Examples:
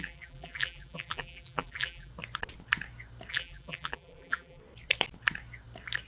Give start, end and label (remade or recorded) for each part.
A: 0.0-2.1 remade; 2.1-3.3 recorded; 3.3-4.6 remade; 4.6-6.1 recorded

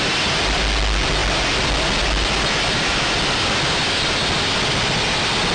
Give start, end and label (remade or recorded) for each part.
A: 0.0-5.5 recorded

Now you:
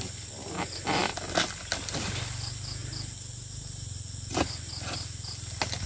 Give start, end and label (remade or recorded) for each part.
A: 0.0-5.9 recorded

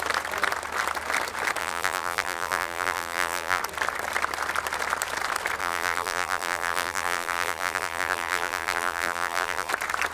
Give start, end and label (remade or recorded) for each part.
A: 0.0-1.6 recorded; 1.6-3.6 remade; 3.6-5.6 recorded; 5.6-9.7 remade; 9.7-10.1 recorded